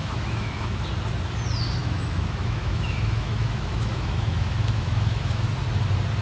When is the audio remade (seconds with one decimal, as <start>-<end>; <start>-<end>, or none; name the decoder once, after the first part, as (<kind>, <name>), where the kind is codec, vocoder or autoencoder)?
0.0-0.8 (autoencoder, DAC-VAE); 1.8-5.5